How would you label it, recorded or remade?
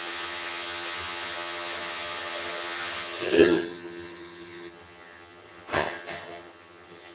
remade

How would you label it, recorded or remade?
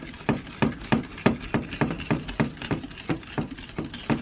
recorded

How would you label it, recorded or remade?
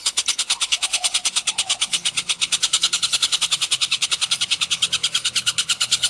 remade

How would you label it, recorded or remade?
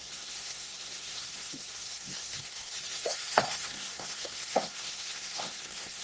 remade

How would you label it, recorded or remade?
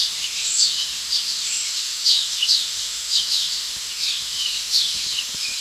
remade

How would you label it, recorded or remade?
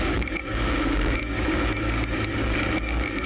remade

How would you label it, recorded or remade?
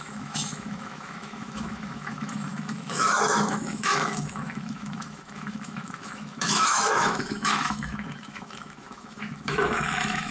remade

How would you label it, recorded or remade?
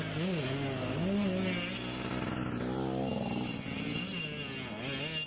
recorded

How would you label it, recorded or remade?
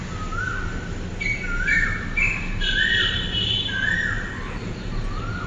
recorded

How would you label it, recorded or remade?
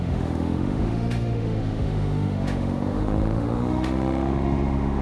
remade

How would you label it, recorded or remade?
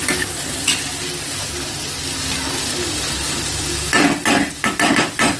recorded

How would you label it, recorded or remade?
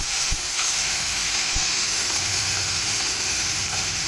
remade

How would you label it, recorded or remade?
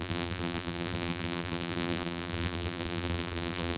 remade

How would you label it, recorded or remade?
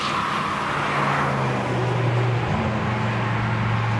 recorded